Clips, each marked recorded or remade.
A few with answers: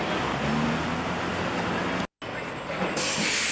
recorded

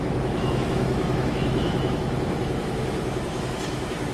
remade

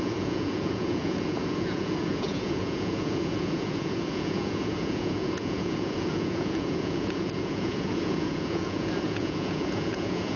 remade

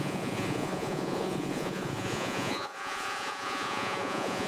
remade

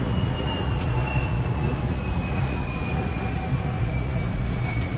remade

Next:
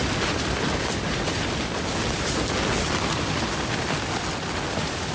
recorded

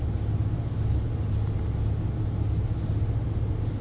recorded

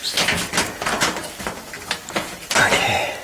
recorded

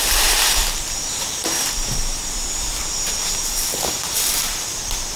remade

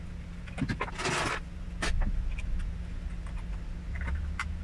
recorded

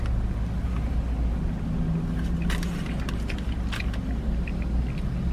recorded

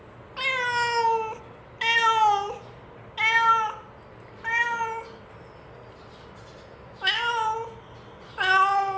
recorded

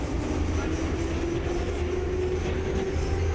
recorded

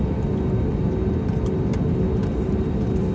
recorded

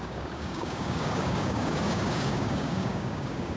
remade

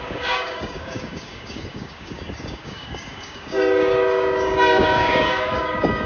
remade